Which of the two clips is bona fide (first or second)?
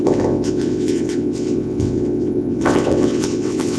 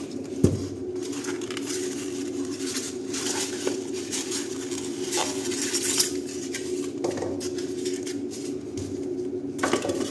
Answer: second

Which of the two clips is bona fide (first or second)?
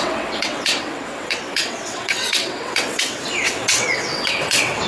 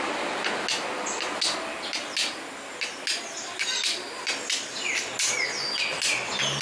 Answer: second